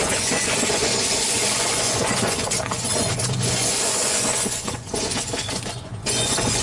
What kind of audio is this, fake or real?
fake